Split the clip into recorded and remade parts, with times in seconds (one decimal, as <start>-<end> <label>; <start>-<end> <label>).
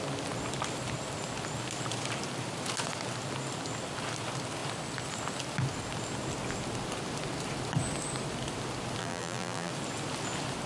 0.0-9.0 recorded; 9.0-9.7 remade; 9.7-10.7 recorded